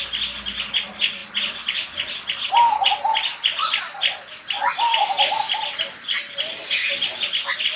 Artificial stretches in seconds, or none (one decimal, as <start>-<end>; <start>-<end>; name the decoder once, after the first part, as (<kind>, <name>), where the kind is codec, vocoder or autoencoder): none